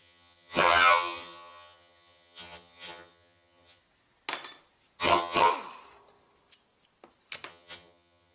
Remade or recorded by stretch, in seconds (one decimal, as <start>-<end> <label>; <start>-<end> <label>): 0.0-3.8 remade; 3.8-5.0 recorded; 5.0-5.5 remade; 5.5-7.5 recorded; 7.5-8.3 remade